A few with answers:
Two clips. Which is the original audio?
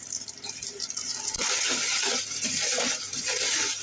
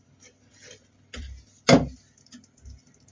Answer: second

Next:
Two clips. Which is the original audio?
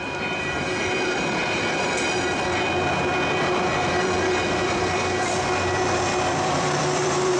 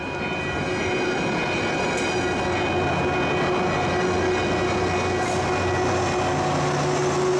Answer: second